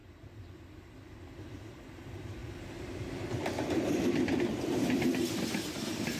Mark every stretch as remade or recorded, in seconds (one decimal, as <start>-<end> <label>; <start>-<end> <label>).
0.0-2.4 recorded; 2.4-6.2 remade